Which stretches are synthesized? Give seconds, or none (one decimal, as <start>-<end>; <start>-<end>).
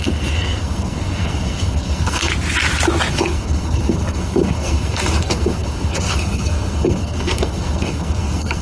0.0-2.3; 3.1-8.6